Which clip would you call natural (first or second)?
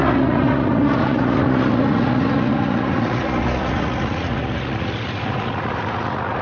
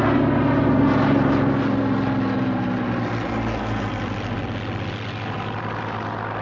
second